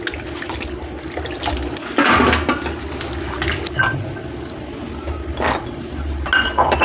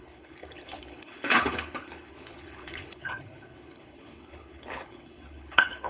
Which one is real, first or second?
first